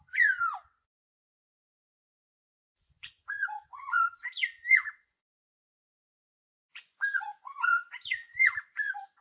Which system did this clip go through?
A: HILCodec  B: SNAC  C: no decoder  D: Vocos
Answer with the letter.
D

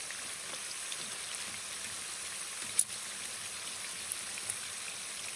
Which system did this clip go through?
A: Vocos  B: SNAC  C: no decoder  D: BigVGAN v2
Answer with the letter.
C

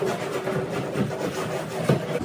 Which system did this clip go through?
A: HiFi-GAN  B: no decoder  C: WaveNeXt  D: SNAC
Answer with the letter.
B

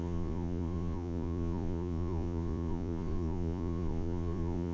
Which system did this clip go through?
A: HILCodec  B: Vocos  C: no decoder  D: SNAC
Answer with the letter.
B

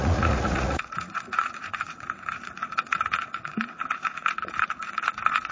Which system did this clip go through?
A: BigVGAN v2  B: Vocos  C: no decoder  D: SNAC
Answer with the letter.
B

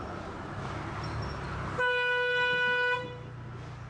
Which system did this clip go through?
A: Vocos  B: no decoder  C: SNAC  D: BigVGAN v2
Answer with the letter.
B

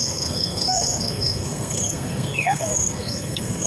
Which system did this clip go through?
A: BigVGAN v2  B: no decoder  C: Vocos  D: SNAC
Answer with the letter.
D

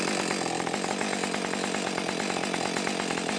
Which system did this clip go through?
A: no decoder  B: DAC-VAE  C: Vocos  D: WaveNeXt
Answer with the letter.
A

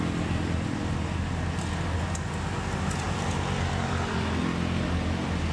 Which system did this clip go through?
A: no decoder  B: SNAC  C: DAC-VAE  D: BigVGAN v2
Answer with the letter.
A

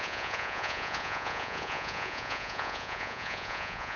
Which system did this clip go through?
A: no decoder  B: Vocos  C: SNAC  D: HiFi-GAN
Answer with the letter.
B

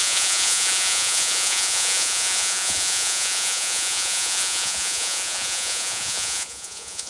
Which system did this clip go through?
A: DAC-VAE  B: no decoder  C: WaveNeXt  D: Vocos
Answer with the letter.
D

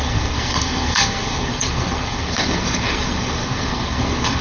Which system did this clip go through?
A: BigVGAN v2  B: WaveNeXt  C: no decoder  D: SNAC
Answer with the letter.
D